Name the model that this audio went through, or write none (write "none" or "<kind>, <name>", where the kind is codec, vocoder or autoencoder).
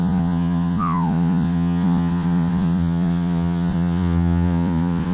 vocoder, Vocos